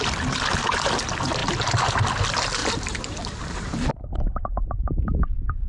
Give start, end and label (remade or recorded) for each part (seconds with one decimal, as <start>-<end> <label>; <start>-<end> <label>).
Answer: 0.0-2.6 recorded; 2.6-3.9 remade; 3.9-4.8 recorded; 4.8-5.7 remade

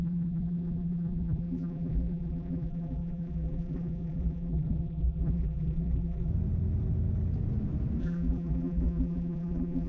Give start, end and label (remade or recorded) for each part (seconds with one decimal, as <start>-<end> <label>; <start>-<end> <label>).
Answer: 0.0-6.3 remade; 6.3-8.0 recorded; 8.0-9.9 remade

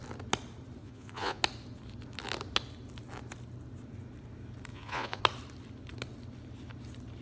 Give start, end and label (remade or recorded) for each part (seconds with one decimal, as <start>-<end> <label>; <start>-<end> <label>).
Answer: 0.0-0.8 recorded; 0.8-1.4 remade; 1.4-4.7 recorded; 4.7-5.2 remade; 5.2-7.2 recorded

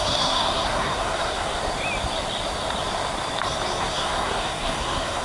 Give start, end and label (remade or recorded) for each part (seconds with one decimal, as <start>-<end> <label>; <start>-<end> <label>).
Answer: 0.0-1.6 remade; 1.6-3.8 recorded; 3.8-5.2 remade

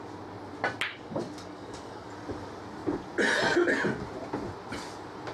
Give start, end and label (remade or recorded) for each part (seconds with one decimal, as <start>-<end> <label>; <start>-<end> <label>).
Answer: 0.0-0.9 recorded; 0.9-2.1 remade; 2.1-5.3 recorded